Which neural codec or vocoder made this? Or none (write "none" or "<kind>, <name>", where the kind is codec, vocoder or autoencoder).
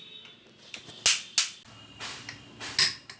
none